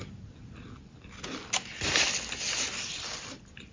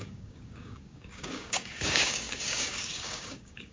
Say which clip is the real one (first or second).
first